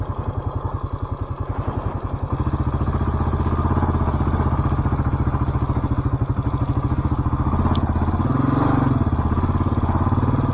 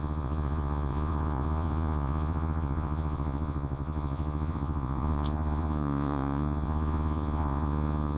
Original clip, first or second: first